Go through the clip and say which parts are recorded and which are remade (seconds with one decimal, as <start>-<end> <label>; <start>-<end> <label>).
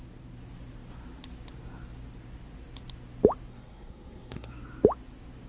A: 0.0-3.5 recorded; 3.5-4.5 remade; 4.5-5.5 recorded